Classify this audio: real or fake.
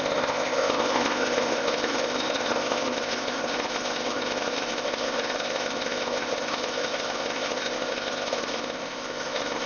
fake